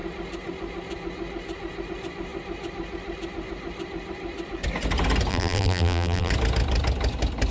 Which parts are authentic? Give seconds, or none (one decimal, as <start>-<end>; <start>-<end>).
0.0-5.3; 6.3-7.5